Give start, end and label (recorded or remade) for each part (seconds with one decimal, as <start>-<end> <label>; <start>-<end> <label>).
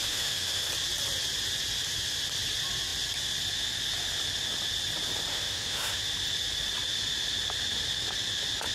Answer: 0.0-0.7 remade; 0.7-5.3 recorded; 5.3-6.0 remade; 6.0-8.7 recorded